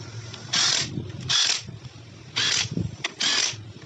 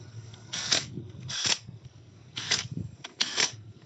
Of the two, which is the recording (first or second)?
first